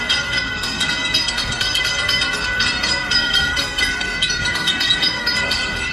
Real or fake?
fake